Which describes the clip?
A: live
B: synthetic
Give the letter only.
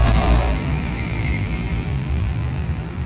B